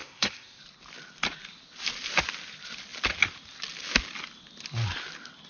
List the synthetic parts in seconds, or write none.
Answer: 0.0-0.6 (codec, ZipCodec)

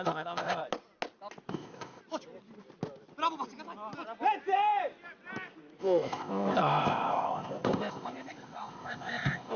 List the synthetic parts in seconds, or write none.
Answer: 0.0-0.6 (codec, ZipCodec); 1.5-2.0; 5.8-9.6

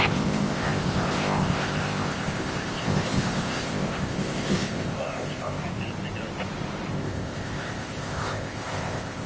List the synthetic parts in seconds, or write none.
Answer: 0.0-5.6 (codec, ZipCodec); 6.9-9.3

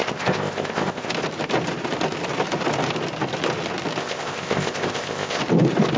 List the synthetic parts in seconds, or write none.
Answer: 0.0-1.1 (codec, ZipCodec); 4.0-5.4